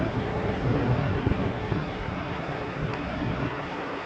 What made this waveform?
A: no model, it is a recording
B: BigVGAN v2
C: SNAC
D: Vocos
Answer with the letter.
C